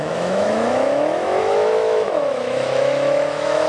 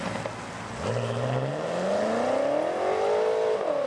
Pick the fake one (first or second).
first